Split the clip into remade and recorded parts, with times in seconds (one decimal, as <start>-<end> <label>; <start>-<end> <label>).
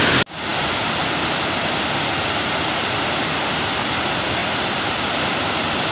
0.0-4.4 recorded; 4.4-5.2 remade; 5.2-5.9 recorded